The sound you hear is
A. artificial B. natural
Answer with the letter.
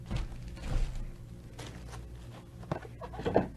B